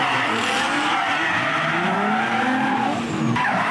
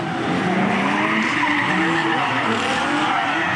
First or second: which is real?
first